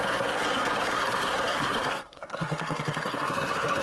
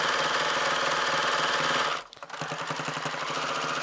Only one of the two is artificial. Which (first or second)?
first